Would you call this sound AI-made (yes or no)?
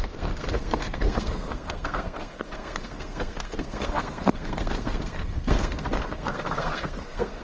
yes